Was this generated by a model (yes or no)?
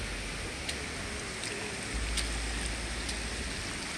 no